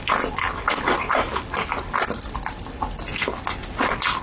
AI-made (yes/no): no